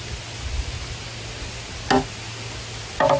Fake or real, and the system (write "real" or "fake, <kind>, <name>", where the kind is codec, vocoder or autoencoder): real